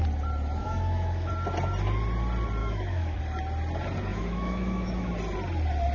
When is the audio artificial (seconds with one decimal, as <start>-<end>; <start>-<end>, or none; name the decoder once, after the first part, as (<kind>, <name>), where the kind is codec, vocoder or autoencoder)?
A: 0.6-1.3 (autoencoder, DAC-VAE); 2.6-3.2; 4.1-5.1